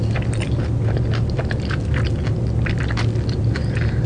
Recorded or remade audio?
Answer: recorded